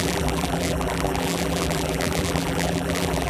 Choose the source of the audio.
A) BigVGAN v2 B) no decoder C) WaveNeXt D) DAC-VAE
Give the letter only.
A